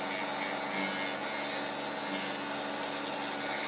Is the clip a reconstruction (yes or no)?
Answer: no